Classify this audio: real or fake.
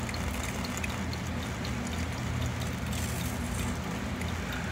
real